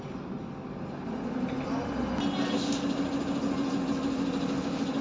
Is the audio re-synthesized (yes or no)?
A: no